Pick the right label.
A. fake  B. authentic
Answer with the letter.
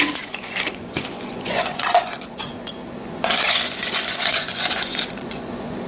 A